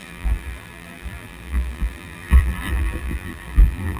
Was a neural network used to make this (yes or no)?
yes